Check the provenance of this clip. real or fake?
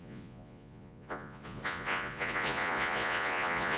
fake